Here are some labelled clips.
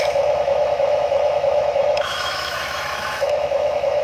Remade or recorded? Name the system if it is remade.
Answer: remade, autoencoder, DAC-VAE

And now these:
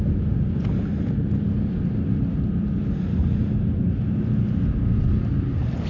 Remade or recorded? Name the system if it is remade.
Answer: recorded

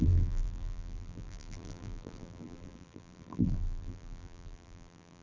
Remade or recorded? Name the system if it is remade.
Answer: remade, vocoder, BigVGAN v2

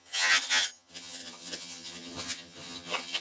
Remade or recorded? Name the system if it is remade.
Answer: remade, vocoder, HiFi-GAN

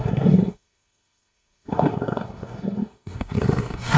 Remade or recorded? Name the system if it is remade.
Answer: remade, codec, SNAC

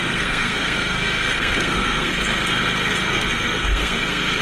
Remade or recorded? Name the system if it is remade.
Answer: remade, codec, SNAC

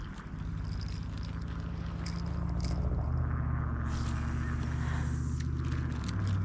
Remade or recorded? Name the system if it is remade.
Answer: recorded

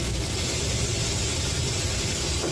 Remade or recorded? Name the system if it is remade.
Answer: recorded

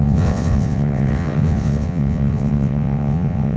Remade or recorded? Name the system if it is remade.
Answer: remade, vocoder, WaveNeXt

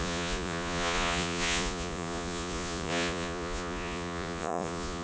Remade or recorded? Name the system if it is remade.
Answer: remade, vocoder, Vocos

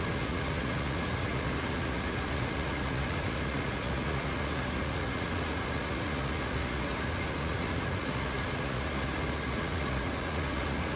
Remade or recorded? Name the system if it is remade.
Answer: remade, vocoder, Vocos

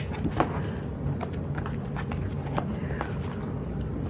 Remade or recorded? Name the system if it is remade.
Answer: recorded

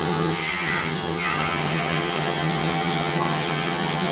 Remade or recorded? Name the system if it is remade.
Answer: remade, vocoder, HiFi-GAN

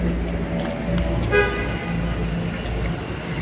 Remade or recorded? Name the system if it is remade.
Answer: recorded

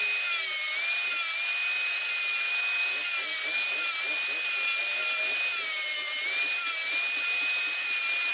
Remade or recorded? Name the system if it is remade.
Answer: recorded